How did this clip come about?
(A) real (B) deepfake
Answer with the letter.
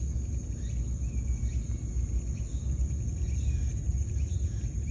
A